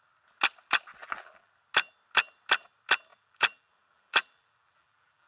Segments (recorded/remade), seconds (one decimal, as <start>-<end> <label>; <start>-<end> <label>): 0.0-1.0 recorded; 1.0-1.5 remade; 1.5-3.1 recorded; 3.1-5.3 remade